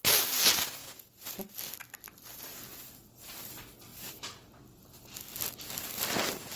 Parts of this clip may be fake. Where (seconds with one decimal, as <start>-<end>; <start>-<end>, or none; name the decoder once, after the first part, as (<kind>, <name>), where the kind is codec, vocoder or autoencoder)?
0.8-1.3 (vocoder, Vocos)